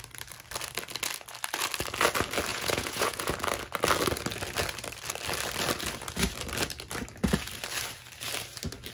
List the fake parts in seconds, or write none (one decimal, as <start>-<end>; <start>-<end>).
2.5-3.3